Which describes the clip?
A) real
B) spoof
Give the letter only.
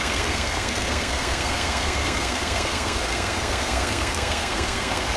B